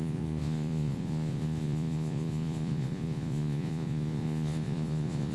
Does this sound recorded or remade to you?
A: remade